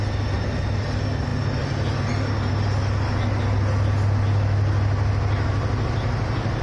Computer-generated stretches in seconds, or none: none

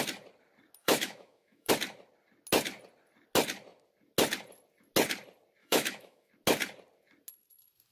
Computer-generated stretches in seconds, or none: 0.8-1.7 (autoencoder, DAC-VAE); 5.6-6.3

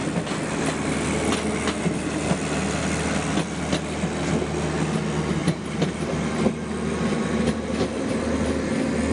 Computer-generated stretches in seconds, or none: 5.4-6.3 (vocoder, BigVGAN v2)